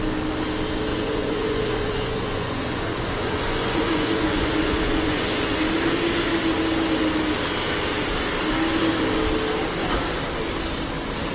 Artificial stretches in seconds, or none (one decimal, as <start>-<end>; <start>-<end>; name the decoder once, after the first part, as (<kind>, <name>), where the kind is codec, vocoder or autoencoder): 0.9-5.6 (vocoder, Vocos)